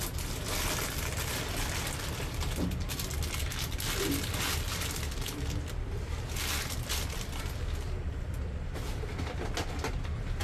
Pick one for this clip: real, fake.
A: real